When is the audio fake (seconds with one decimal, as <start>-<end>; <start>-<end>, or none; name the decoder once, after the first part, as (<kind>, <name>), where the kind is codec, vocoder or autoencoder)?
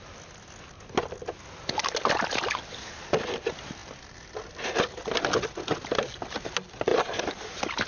none